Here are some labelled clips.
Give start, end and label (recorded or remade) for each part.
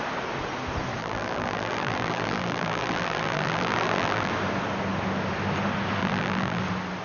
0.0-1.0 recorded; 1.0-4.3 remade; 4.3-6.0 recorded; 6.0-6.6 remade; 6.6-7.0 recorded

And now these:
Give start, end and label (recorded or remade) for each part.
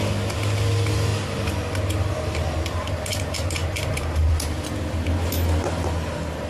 0.0-1.1 recorded; 1.1-1.7 remade; 1.7-6.5 recorded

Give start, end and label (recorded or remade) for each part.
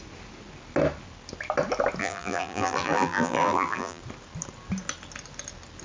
0.0-2.0 recorded; 2.0-4.0 remade; 4.0-5.8 recorded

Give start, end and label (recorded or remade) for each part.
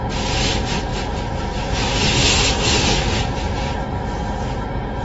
0.0-5.0 recorded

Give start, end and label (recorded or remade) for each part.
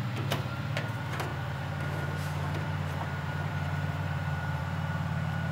0.0-1.3 recorded; 1.3-4.6 remade; 4.6-5.5 recorded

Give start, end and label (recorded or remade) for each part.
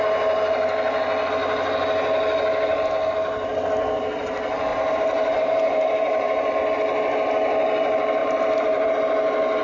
0.0-4.7 recorded; 4.7-6.5 remade; 6.5-8.2 recorded; 8.2-8.9 remade; 8.9-9.6 recorded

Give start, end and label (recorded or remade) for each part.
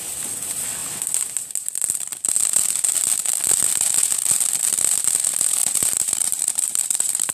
0.0-5.6 recorded; 5.6-7.3 remade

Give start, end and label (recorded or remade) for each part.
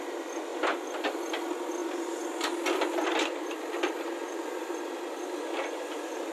0.0-6.3 recorded